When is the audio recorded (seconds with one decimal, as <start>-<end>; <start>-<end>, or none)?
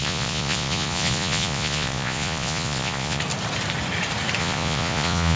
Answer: 3.2-4.4